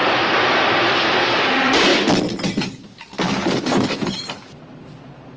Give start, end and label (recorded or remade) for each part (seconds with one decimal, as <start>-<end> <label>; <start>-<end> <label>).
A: 0.0-1.9 remade; 1.9-3.3 recorded; 3.3-5.4 remade